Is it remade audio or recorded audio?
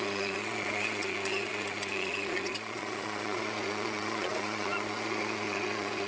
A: remade